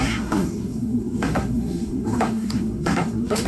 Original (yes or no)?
no